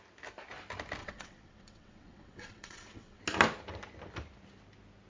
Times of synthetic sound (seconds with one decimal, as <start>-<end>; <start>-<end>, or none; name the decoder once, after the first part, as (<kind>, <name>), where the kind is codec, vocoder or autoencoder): 1.0-3.2 (vocoder, WaveNeXt)